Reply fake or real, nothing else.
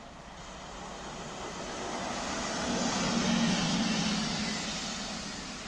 real